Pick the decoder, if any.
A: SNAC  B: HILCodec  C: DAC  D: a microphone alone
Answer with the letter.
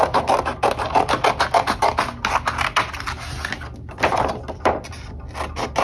D